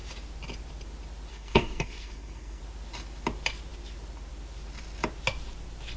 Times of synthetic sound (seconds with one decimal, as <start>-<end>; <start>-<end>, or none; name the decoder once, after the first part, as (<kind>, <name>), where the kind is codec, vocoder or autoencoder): 1.3-2.6 (codec, SNAC)